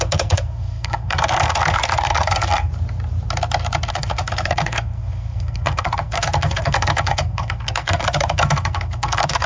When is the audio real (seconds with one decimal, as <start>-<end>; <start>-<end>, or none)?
2.7-3.9